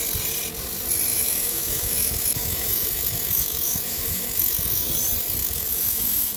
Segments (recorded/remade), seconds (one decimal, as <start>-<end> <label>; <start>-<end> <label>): 0.0-1.1 recorded; 1.1-4.9 remade; 4.9-5.4 recorded; 5.4-6.4 remade